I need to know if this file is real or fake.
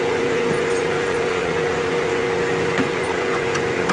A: fake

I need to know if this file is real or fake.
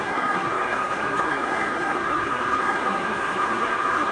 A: fake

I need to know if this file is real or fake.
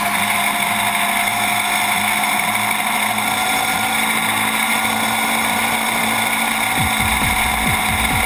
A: real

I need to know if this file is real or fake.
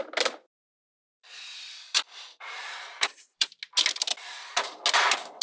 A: real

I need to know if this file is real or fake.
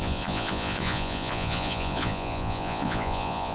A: fake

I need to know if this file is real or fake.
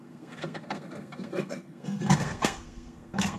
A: fake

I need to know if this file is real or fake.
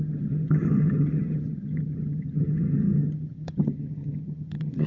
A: fake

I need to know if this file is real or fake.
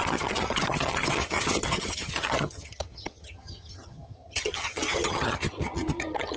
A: fake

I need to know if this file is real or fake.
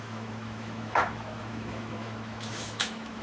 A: fake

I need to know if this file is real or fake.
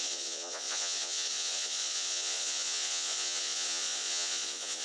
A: fake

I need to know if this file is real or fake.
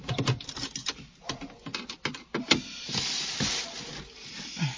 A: real